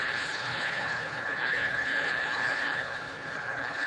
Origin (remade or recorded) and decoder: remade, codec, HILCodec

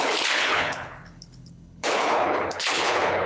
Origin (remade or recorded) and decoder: remade, codec, HILCodec